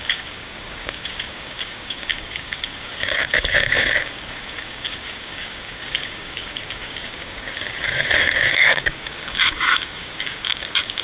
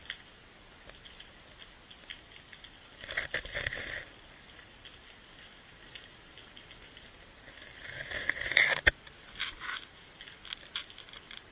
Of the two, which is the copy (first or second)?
first